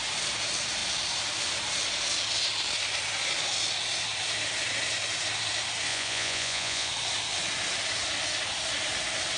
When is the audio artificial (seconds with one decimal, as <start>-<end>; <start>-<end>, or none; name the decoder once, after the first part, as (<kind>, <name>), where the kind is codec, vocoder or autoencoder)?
5.9-6.9 (vocoder, Vocos)